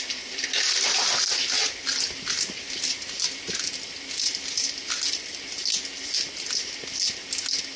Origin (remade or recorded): recorded